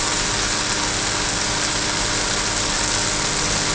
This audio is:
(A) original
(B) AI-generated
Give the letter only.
A